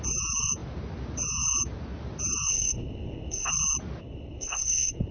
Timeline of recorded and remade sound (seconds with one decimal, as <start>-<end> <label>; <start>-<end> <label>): 0.0-2.5 recorded; 2.5-3.5 remade; 3.5-4.0 recorded; 4.0-5.1 remade